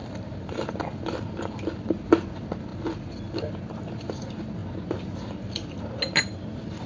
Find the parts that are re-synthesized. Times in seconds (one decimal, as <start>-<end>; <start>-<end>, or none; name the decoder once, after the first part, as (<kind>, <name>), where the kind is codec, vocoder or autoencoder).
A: 0.0-2.1 (vocoder, BigVGAN v2); 2.7-3.5